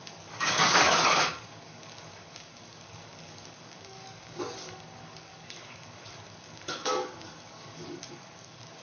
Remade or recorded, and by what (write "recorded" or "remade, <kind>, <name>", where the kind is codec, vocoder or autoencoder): remade, codec, DAC